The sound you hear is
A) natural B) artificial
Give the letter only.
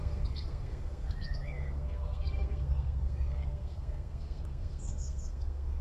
B